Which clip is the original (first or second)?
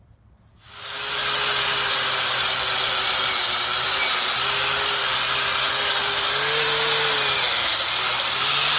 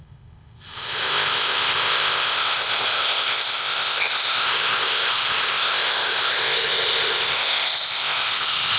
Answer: first